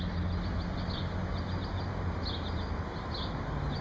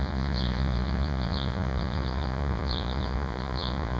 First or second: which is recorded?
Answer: first